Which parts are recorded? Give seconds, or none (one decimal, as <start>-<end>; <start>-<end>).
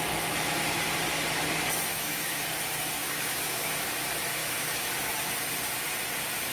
0.0-1.9; 2.4-3.0; 3.8-4.4; 5.1-6.5